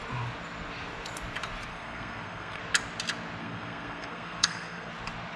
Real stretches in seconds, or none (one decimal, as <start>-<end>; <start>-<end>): 0.0-1.7; 2.6-3.4; 4.9-5.4